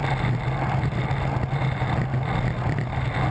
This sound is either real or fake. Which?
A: real